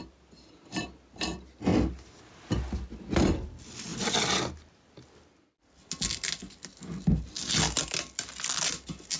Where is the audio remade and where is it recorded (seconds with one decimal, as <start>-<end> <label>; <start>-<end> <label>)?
0.0-9.2 recorded